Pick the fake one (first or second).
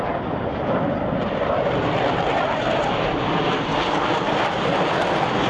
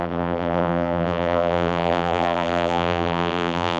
second